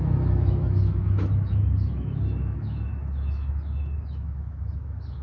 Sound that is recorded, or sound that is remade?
remade